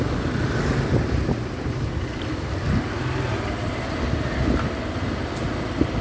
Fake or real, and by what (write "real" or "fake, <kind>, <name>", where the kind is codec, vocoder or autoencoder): real